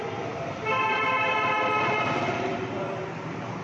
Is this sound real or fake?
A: real